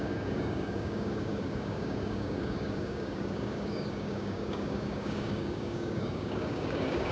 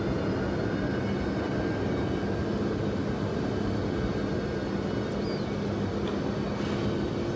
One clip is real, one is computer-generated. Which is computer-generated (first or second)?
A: first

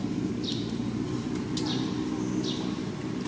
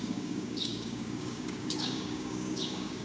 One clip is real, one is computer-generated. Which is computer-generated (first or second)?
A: second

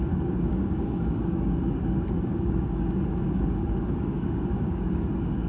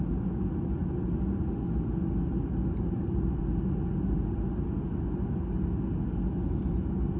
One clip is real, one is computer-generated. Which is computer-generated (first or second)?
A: first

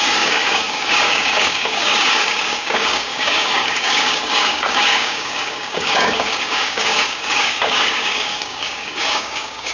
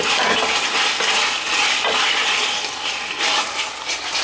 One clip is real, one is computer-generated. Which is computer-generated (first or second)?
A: first